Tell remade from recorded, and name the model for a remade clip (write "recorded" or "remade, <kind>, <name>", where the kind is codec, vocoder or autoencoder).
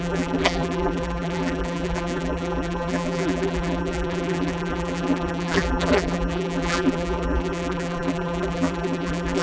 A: remade, vocoder, BigVGAN v2